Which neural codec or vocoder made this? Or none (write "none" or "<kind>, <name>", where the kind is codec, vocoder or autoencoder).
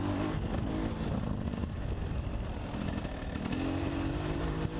none